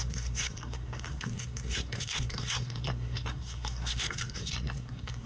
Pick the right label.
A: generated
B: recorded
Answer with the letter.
A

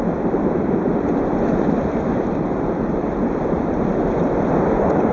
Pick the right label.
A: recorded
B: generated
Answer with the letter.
A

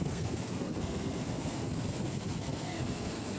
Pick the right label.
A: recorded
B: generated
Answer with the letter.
B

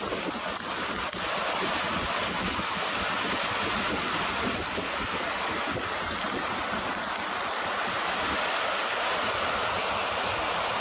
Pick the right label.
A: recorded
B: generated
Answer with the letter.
A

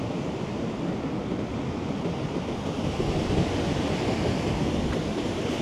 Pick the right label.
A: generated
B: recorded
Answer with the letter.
B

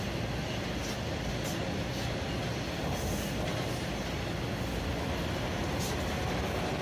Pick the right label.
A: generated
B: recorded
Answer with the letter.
B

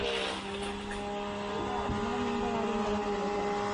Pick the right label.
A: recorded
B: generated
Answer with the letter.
A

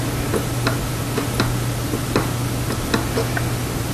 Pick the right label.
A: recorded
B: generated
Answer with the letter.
A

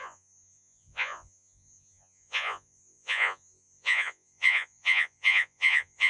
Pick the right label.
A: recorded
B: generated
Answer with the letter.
B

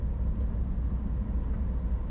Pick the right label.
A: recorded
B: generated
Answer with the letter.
A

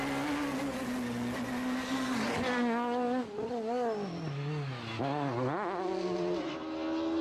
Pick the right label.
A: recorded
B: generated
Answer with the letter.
A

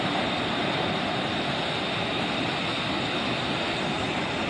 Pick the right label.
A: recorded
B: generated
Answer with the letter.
B